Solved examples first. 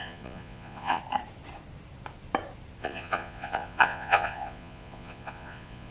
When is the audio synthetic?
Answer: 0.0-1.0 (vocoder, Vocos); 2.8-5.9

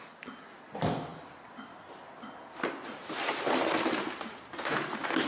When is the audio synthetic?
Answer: none

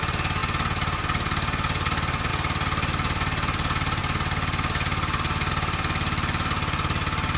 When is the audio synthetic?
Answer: none

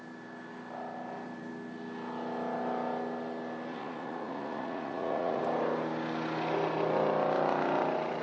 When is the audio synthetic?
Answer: 3.7-5.4 (vocoder, Vocos)

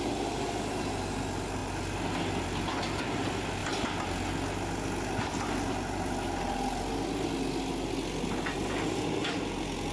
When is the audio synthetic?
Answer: none